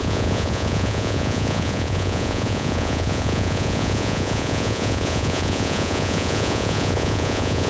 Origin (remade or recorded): remade